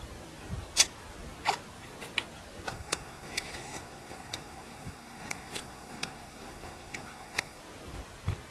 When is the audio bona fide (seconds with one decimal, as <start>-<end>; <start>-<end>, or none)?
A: 0.0-2.7; 7.6-8.5